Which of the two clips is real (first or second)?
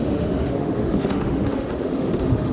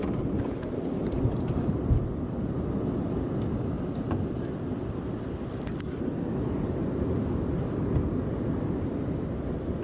second